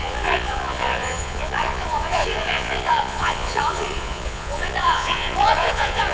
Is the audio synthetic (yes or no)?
yes